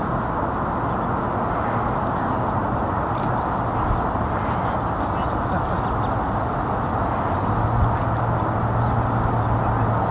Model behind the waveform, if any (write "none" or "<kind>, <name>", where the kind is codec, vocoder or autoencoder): none